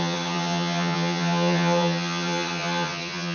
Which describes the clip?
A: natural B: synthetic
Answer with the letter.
B